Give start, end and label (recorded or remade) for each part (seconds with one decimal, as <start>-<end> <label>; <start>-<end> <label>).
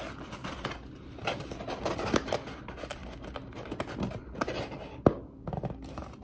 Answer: 0.0-6.2 recorded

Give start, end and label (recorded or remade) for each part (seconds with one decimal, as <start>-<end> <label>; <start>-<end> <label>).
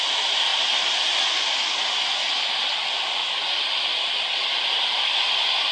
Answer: 0.0-5.7 remade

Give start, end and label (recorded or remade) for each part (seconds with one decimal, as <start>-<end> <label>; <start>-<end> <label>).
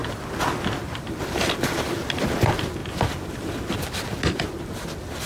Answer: 0.0-5.3 recorded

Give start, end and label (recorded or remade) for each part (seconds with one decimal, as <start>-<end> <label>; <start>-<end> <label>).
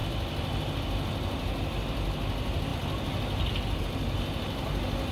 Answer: 0.0-5.1 recorded